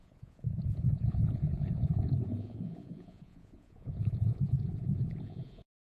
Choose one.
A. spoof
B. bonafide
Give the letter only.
A